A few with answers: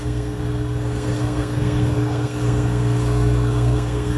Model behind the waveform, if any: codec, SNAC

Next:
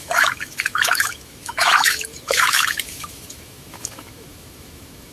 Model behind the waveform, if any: autoencoder, DAC-VAE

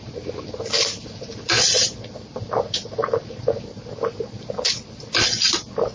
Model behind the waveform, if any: none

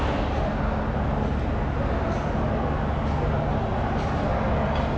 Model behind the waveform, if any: none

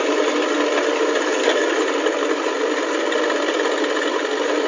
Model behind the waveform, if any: none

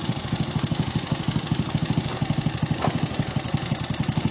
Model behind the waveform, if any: none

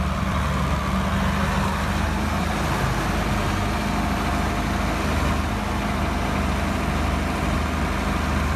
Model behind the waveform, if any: none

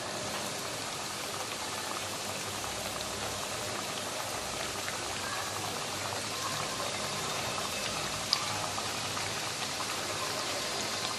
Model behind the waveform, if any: vocoder, BigVGAN v2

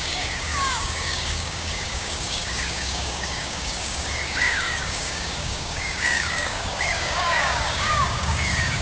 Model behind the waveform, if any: codec, DAC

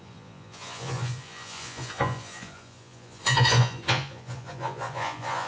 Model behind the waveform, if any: vocoder, Vocos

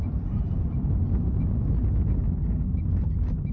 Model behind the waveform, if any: none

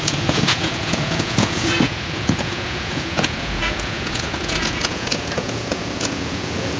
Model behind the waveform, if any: vocoder, Vocos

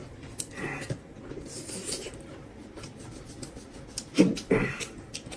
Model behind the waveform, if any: none